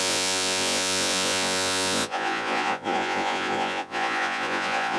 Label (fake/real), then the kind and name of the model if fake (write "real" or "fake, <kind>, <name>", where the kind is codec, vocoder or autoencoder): fake, vocoder, Vocos